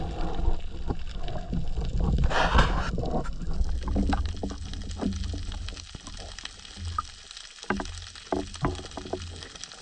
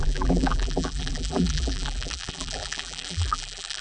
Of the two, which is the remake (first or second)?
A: second